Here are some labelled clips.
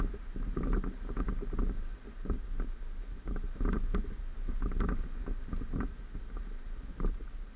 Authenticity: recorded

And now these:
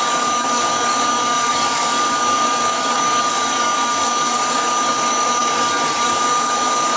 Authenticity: remade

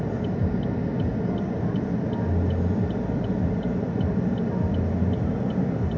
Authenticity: recorded